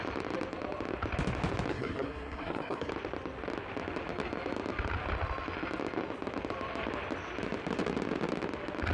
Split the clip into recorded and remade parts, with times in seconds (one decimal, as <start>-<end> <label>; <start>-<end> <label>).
0.0-1.7 recorded; 1.7-2.9 remade; 2.9-8.9 recorded